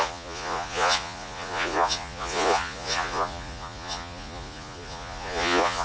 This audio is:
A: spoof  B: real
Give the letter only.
A